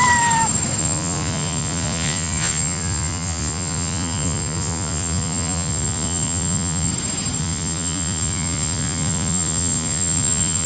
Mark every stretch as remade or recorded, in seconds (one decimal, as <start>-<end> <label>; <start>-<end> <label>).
0.0-0.8 recorded; 0.8-6.9 remade; 6.9-7.4 recorded; 7.4-10.7 remade